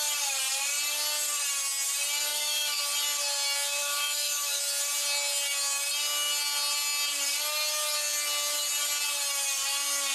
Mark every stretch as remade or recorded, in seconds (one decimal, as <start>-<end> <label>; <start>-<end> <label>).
0.0-2.3 recorded; 2.3-2.8 remade; 2.8-3.8 recorded; 3.8-4.6 remade; 4.6-10.1 recorded